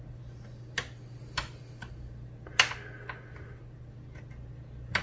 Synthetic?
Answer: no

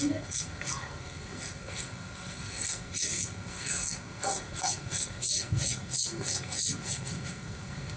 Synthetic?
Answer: yes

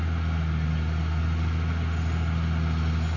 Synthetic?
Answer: no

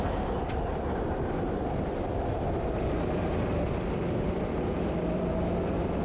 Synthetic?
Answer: yes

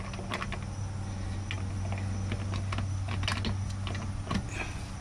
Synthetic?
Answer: no